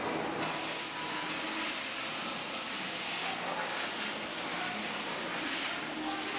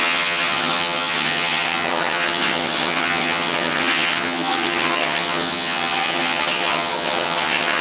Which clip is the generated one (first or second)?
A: second